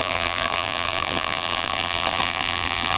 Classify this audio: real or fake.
fake